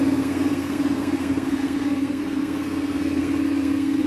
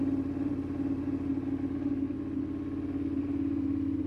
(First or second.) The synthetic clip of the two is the first